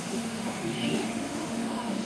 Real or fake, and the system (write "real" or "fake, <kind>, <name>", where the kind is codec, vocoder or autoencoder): fake, autoencoder, DAC-VAE